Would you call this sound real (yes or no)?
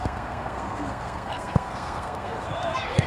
no